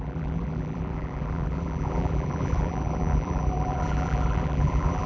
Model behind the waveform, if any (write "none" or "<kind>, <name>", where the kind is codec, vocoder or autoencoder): vocoder, BigVGAN v2